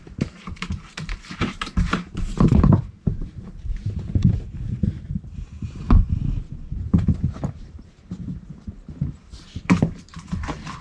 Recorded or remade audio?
remade